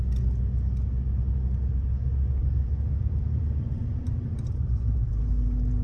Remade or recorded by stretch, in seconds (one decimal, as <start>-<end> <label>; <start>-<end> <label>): 0.0-2.4 recorded; 2.4-5.1 remade; 5.1-5.8 recorded